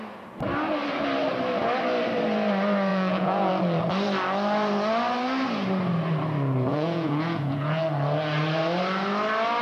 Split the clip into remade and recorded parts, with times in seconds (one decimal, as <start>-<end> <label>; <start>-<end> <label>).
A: 0.0-2.9 recorded; 2.9-3.5 remade; 3.5-6.7 recorded; 6.7-7.8 remade; 7.8-9.6 recorded